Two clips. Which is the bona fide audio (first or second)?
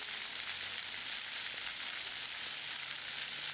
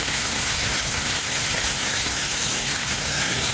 first